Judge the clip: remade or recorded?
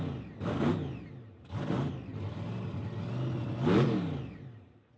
recorded